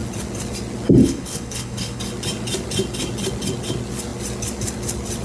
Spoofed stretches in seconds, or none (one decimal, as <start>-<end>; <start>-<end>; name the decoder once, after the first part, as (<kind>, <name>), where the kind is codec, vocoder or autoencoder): 1.0-2.0 (codec, HILCodec)